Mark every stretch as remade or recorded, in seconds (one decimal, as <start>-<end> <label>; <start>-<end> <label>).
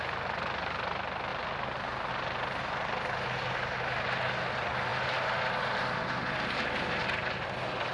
0.0-7.9 recorded